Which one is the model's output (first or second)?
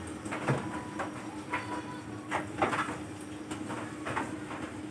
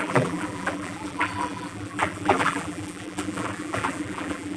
second